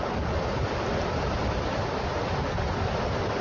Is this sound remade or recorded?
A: recorded